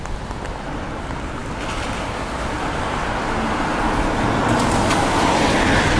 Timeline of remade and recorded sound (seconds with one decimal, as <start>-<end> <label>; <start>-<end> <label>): 0.0-6.0 recorded